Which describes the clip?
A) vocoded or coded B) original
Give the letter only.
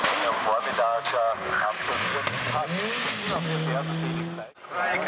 B